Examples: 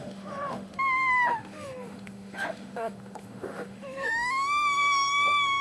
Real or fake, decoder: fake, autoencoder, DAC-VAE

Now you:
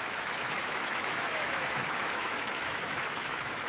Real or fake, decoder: fake, autoencoder, DAC-VAE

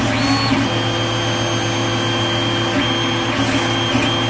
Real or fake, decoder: real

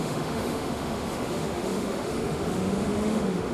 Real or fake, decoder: fake, autoencoder, DAC-VAE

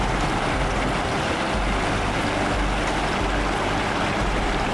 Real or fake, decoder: real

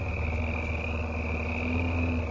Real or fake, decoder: real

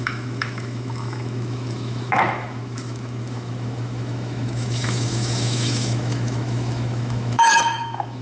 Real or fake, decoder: fake, autoencoder, DAC-VAE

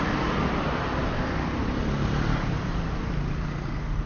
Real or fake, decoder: real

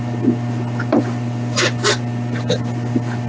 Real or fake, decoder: real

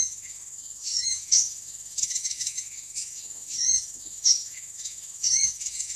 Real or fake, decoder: fake, autoencoder, DAC-VAE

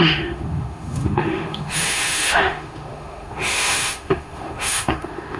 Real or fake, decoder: fake, autoencoder, DAC-VAE